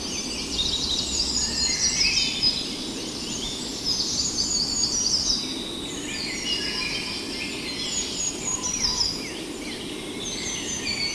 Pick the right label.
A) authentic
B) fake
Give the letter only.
A